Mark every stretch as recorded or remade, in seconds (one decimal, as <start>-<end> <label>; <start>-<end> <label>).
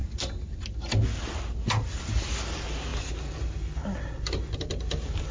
0.0-5.3 recorded